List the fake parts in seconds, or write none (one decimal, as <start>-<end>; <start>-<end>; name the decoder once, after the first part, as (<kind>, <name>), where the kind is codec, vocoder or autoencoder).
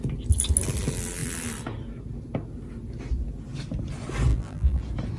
4.3-4.8 (vocoder, BigVGAN v2)